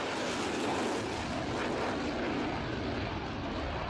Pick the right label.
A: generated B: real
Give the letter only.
B